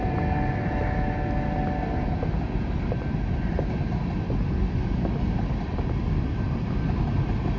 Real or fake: real